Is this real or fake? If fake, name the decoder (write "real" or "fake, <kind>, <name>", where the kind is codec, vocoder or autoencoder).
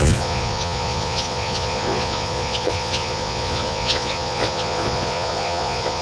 fake, vocoder, Vocos